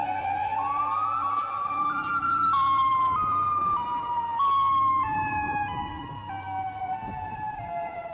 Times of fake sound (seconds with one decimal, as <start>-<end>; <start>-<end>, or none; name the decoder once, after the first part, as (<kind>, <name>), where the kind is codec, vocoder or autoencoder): 1.6-6.1 (vocoder, BigVGAN v2)

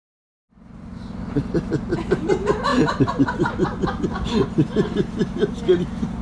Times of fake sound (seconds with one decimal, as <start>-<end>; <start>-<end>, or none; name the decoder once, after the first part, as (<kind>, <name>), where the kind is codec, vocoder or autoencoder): 2.7-3.4 (vocoder, BigVGAN v2)

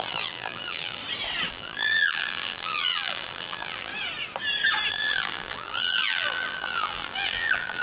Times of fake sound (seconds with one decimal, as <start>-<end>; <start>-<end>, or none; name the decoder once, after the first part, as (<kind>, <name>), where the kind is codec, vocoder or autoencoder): 0.0-1.0 (vocoder, BigVGAN v2); 1.5-3.9; 4.9-7.8

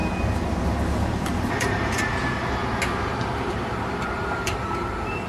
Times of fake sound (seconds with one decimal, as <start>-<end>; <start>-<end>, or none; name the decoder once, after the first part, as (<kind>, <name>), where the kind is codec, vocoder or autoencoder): 1.1-2.1 (vocoder, BigVGAN v2); 3.0-5.3

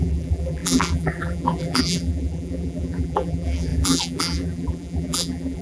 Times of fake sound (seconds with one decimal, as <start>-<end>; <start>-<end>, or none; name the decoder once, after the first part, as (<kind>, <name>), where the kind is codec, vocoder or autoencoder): 0.0-5.6 (vocoder, BigVGAN v2)

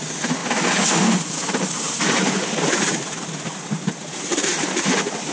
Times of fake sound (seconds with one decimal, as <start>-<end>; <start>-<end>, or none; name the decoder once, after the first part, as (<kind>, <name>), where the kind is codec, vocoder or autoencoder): 0.0-0.4 (vocoder, BigVGAN v2); 1.6-5.3

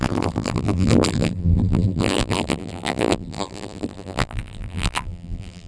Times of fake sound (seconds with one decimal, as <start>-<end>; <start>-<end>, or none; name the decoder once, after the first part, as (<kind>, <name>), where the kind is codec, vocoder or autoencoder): 0.0-5.7 (vocoder, BigVGAN v2)